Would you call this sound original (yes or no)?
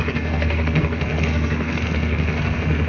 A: no